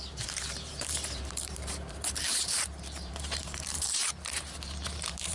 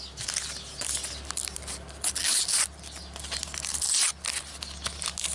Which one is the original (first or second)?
second